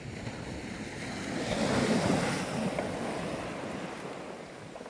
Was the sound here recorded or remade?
recorded